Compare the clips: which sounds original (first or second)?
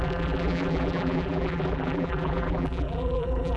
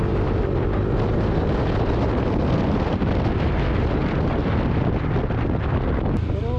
second